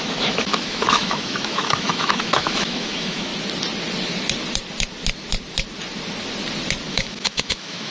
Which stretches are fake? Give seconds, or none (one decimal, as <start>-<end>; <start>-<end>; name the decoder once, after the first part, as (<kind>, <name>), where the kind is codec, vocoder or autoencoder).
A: 0.0-3.3 (autoencoder, DAC-VAE); 6.9-7.9